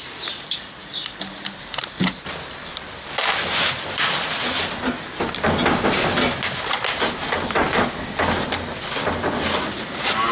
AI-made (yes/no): no